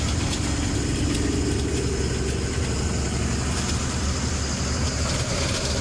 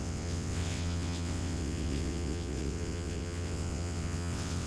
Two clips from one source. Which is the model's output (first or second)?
second